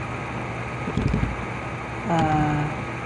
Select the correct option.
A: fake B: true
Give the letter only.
B